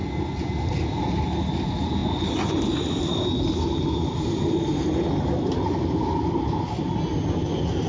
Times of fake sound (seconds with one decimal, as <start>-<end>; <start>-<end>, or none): none